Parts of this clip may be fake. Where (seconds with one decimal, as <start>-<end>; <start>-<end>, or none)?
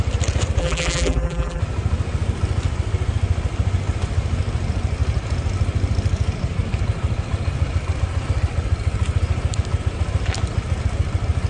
0.6-1.6